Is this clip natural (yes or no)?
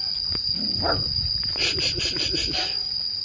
yes